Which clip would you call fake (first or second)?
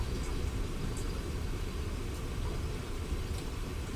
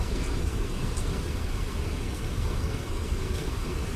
second